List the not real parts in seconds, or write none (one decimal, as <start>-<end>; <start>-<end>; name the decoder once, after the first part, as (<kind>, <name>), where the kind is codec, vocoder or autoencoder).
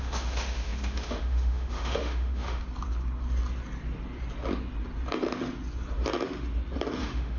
0.0-2.6 (autoencoder, DAC-VAE); 7.0-7.4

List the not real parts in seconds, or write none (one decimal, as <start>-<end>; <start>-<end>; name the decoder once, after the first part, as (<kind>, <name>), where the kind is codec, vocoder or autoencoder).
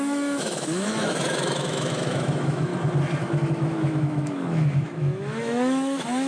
0.0-2.7 (autoencoder, DAC-VAE); 3.2-6.3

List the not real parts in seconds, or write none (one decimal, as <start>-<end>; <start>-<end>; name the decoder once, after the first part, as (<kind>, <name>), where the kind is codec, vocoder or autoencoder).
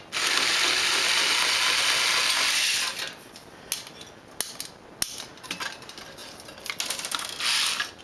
none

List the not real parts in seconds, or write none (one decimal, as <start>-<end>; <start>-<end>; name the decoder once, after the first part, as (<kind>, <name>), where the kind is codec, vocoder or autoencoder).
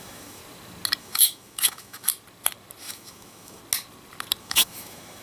0.0-0.4 (autoencoder, DAC-VAE); 1.0-2.1; 2.8-3.6; 4.4-5.2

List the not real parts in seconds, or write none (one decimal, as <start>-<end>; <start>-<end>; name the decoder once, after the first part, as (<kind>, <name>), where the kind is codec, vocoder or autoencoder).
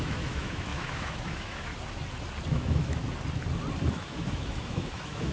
0.0-1.7 (autoencoder, DAC-VAE); 2.5-3.0; 3.9-5.3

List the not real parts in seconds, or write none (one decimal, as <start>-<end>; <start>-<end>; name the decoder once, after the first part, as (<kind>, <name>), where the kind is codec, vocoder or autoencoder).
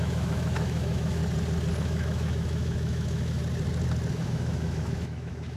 0.0-1.2 (autoencoder, DAC-VAE); 1.8-3.4; 4.1-5.6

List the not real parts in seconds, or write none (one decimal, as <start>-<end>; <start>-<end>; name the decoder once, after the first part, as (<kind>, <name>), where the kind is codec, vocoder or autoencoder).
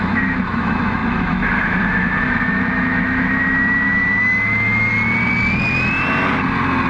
0.0-4.9 (autoencoder, DAC-VAE)